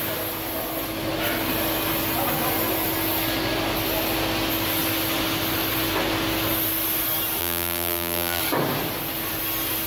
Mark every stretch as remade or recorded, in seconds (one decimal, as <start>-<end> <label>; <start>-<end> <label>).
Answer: 0.0-7.4 recorded; 7.4-8.4 remade; 8.4-9.9 recorded